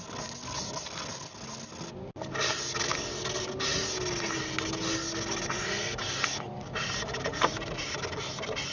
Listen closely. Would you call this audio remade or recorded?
recorded